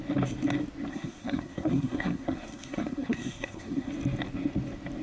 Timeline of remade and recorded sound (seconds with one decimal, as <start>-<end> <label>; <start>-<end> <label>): 0.0-0.9 recorded; 0.9-3.9 remade; 3.9-5.0 recorded